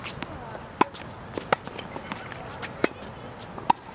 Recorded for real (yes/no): yes